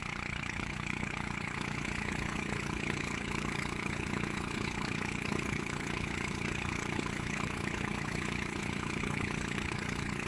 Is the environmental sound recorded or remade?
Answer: remade